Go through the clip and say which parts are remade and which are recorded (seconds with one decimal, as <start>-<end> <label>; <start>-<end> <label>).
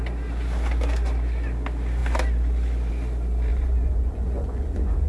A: 0.0-3.5 recorded; 3.5-5.1 remade